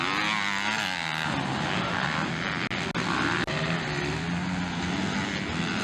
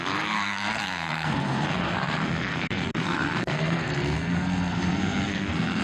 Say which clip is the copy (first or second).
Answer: second